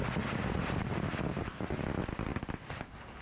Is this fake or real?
real